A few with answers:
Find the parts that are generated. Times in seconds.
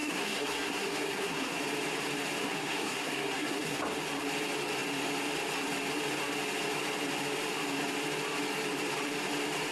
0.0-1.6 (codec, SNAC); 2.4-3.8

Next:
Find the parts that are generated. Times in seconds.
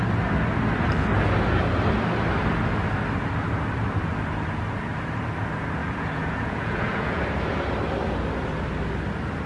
5.8-7.2 (vocoder, Vocos)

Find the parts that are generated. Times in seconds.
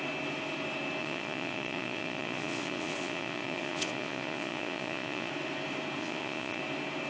1.0-5.3 (vocoder, Vocos); 6.0-6.6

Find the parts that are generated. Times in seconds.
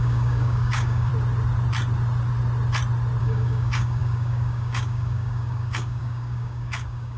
0.0-1.1 (codec, DAC); 3.2-7.2